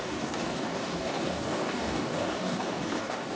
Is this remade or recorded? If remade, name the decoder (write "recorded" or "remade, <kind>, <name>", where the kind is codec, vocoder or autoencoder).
remade, codec, DAC